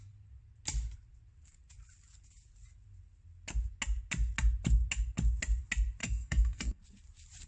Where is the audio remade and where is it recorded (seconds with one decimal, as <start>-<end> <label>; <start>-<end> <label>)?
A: 0.0-6.0 recorded; 6.0-6.8 remade; 6.8-7.5 recorded